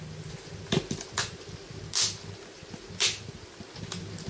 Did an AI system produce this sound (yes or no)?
no